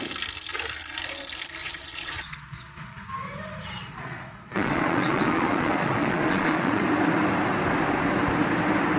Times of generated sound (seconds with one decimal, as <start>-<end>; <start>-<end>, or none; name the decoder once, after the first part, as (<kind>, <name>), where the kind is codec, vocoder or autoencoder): 1.6-2.9 (vocoder, Vocos); 3.8-6.8